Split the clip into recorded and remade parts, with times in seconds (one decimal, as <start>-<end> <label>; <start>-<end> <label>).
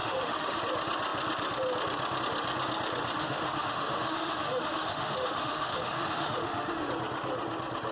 0.0-0.6 remade; 0.6-3.2 recorded; 3.2-6.9 remade; 6.9-7.9 recorded